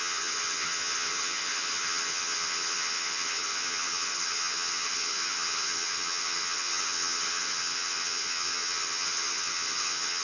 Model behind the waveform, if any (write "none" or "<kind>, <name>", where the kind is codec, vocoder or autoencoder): vocoder, HiFi-GAN